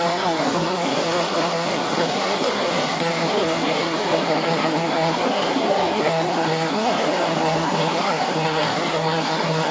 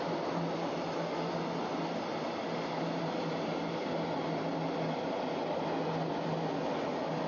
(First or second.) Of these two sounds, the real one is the second